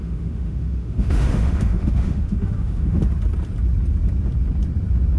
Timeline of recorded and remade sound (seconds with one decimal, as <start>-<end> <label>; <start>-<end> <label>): 0.0-3.0 remade; 3.0-5.2 recorded